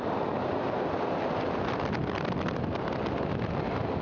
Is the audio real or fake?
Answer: real